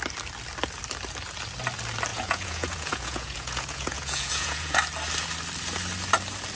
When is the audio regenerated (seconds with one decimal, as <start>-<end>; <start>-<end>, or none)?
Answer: 2.1-4.8